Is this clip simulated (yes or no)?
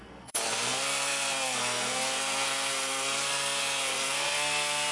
yes